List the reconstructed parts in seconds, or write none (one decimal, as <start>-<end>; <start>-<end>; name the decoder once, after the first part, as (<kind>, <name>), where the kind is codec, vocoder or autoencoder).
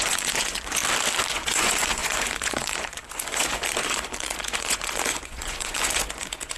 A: 0.0-0.8 (vocoder, Vocos); 1.3-6.6